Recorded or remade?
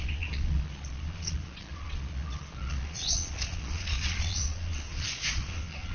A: remade